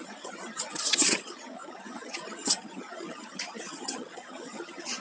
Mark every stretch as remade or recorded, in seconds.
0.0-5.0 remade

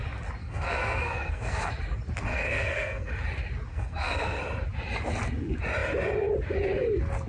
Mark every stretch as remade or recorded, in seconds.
0.0-0.4 recorded; 0.4-1.7 remade; 1.7-2.3 recorded; 2.3-3.1 remade; 3.1-3.7 recorded; 3.7-4.4 remade; 4.4-7.3 recorded

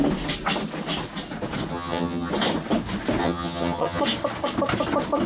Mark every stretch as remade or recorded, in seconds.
0.0-1.7 recorded; 1.7-2.3 remade; 2.3-3.2 recorded; 3.2-4.0 remade; 4.0-5.3 recorded

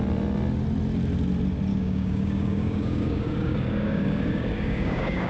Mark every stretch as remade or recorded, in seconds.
0.0-1.7 recorded; 1.7-5.3 remade

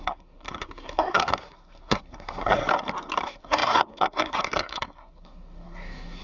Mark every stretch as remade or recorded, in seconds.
0.0-2.6 remade; 2.6-3.2 recorded; 3.2-6.2 remade